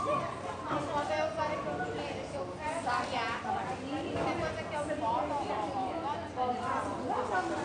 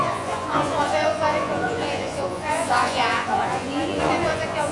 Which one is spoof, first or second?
second